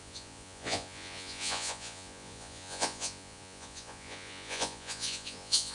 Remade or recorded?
remade